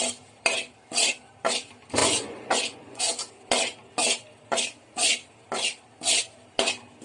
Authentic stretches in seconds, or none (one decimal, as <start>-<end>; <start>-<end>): 0.0-2.0; 3.0-7.0